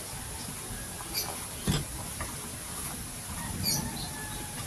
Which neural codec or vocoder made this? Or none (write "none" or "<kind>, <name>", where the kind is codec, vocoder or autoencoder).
none